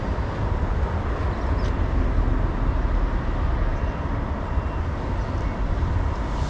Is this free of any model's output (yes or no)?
yes